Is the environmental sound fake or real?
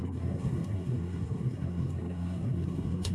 fake